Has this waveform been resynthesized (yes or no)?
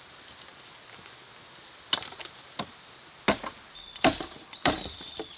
no